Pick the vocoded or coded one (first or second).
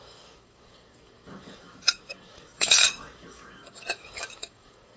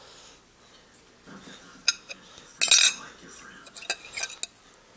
first